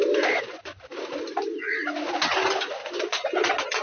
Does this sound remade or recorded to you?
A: recorded